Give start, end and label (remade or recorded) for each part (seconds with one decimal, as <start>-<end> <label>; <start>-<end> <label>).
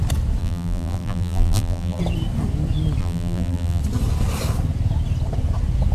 0.0-0.4 recorded; 0.4-2.0 remade; 2.0-3.0 recorded; 3.0-3.8 remade; 3.8-5.9 recorded